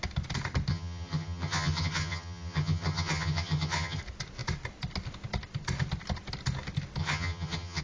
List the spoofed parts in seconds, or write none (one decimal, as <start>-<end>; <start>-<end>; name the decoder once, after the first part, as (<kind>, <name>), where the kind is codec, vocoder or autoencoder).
0.7-4.0 (vocoder, HiFi-GAN); 7.0-7.8

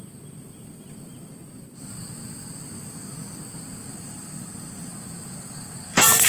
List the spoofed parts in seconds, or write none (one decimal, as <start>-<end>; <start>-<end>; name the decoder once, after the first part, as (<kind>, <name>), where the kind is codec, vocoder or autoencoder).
3.8-6.3 (vocoder, BigVGAN v2)

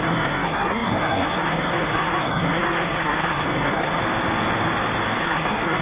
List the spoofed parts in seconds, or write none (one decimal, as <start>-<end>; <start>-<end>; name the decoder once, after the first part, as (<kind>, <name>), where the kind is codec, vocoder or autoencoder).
0.0-4.0 (codec, SNAC); 5.2-5.8

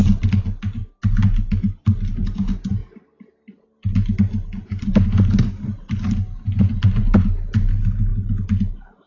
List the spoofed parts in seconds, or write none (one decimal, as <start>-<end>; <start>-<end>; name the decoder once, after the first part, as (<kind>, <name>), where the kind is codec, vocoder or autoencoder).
none

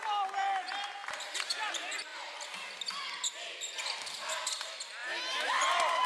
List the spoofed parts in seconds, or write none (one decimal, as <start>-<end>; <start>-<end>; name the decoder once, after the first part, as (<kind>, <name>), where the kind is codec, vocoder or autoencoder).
none